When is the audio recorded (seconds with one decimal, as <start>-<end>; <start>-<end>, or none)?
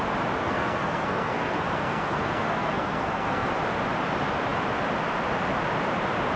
0.0-0.4; 3.5-6.4